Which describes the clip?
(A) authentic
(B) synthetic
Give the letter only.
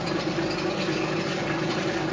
A